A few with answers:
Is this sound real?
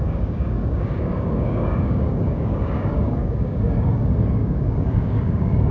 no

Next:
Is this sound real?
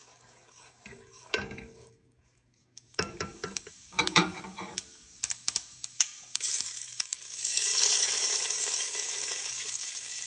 no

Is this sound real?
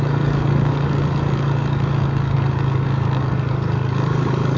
no